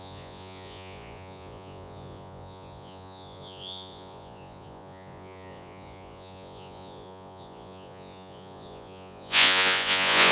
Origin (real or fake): fake